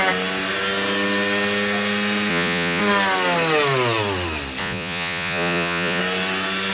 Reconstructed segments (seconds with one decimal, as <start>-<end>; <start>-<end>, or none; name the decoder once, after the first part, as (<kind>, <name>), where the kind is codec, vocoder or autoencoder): 2.3-2.8 (vocoder, Vocos); 4.6-6.0